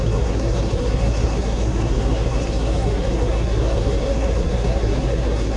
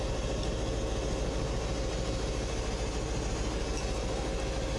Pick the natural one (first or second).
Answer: second